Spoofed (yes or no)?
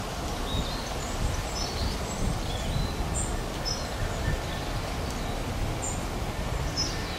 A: no